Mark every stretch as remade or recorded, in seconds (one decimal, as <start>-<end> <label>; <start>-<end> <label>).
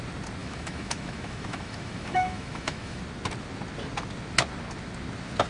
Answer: 0.0-0.4 recorded; 0.4-3.0 remade; 3.0-5.5 recorded